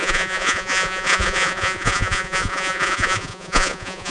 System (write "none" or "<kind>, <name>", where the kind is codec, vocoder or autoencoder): vocoder, Vocos